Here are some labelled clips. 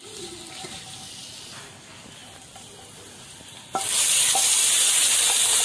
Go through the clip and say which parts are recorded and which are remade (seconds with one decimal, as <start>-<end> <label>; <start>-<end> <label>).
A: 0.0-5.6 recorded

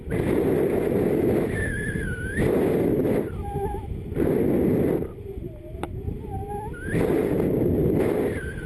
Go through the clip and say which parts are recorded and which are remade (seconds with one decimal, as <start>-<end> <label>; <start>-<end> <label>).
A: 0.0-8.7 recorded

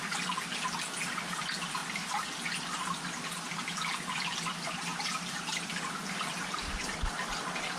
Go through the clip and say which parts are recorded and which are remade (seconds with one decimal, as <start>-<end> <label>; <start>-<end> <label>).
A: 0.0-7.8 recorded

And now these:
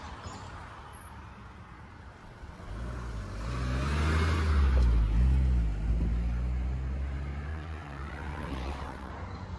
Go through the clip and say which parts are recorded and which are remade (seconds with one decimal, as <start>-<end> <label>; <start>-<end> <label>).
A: 0.0-2.2 recorded; 2.2-2.7 remade; 2.7-7.5 recorded; 7.5-9.1 remade; 9.1-9.6 recorded